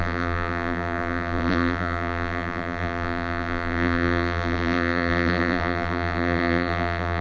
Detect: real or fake fake